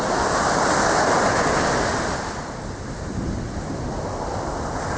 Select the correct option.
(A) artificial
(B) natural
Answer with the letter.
B